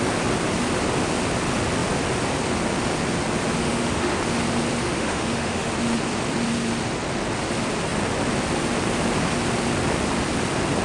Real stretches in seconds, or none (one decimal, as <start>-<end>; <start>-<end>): 0.0-3.6; 4.2-4.8; 5.7-10.8